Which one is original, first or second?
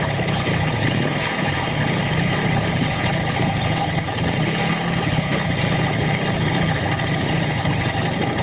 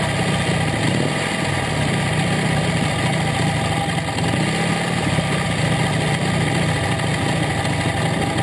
second